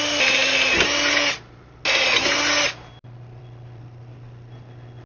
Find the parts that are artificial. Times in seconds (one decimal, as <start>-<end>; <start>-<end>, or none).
none